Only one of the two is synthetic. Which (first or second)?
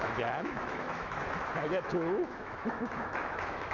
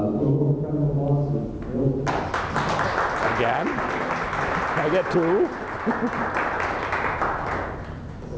first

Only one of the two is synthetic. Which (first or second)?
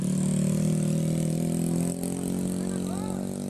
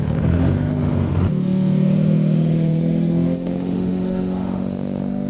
second